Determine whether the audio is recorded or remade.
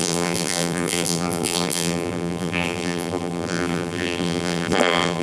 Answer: remade